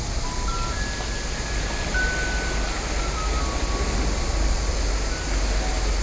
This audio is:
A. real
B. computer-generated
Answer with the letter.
A